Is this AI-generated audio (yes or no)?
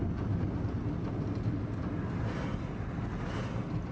no